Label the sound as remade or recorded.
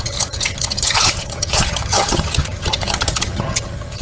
remade